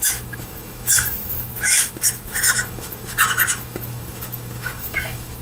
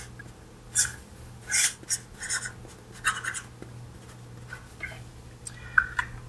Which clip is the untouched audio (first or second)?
second